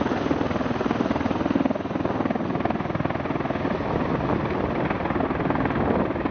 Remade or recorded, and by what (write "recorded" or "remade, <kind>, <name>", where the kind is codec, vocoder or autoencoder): recorded